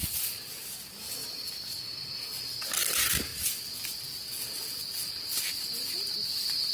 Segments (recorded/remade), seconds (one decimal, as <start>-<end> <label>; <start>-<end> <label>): 0.0-1.2 recorded; 1.2-1.8 remade; 1.8-6.7 recorded